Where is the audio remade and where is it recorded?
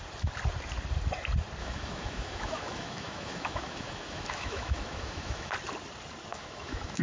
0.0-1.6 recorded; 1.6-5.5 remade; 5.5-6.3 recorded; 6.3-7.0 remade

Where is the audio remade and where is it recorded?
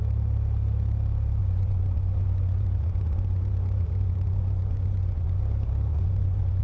0.0-1.4 recorded; 1.4-5.4 remade; 5.4-5.9 recorded; 5.9-6.6 remade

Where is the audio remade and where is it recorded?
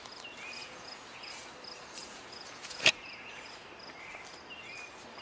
0.0-0.6 recorded; 0.6-1.3 remade; 1.3-2.0 recorded; 2.0-3.5 remade; 3.5-5.2 recorded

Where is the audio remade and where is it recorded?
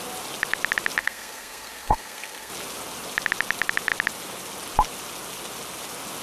0.0-1.0 recorded; 1.0-2.5 remade; 2.5-6.2 recorded